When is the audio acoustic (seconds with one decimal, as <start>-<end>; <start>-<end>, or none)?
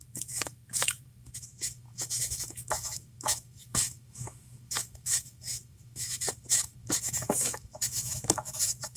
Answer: none